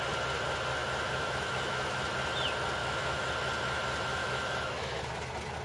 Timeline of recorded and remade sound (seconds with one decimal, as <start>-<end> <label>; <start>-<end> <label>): 0.0-0.8 recorded; 0.8-2.0 remade; 2.0-2.8 recorded; 2.8-3.3 remade; 3.3-4.2 recorded; 4.2-5.1 remade; 5.1-5.6 recorded